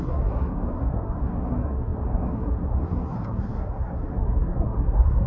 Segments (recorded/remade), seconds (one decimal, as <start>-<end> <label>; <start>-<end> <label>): 0.0-5.3 remade